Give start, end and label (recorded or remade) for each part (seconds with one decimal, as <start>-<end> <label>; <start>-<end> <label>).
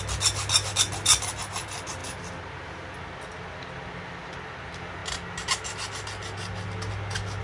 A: 0.0-7.4 recorded